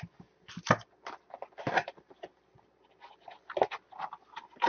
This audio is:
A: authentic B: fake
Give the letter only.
A